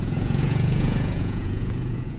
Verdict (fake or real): fake